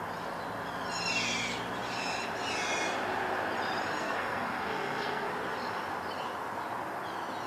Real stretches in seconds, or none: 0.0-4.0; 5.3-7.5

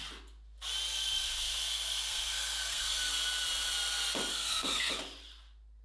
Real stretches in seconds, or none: 0.0-0.9; 3.1-4.3; 4.9-5.8

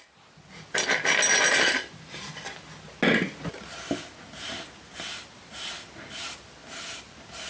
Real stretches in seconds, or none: 0.0-7.5

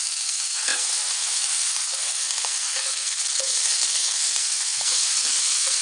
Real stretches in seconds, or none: none

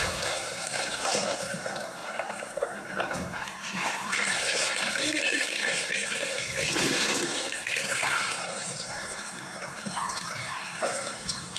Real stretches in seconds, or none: none

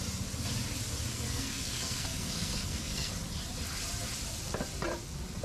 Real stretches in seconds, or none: 0.0-1.1; 3.1-5.4

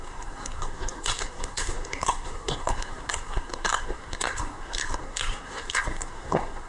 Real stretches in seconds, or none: none